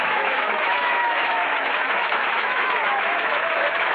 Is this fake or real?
fake